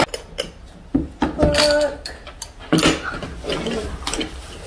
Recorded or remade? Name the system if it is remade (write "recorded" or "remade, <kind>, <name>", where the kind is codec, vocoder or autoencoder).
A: recorded